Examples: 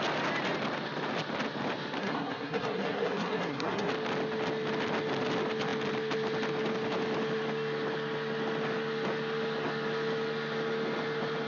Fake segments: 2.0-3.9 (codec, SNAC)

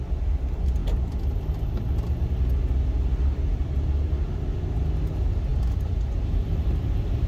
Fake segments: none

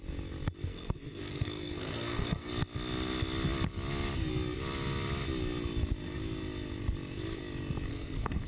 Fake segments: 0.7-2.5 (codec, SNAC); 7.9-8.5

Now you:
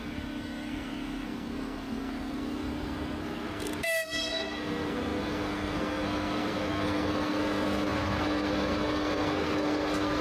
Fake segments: 0.0-10.2 (codec, SNAC)

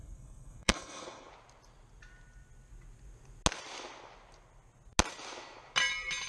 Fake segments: 0.0-1.3 (codec, SNAC)